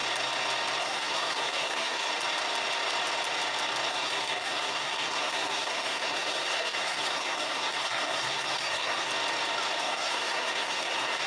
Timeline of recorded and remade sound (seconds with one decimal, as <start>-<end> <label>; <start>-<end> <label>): 0.0-0.8 recorded; 0.8-2.1 remade; 2.1-3.9 recorded; 3.9-9.1 remade; 9.1-9.8 recorded; 9.8-11.3 remade